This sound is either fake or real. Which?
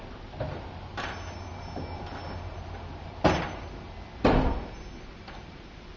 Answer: real